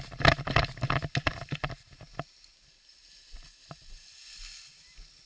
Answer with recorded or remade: recorded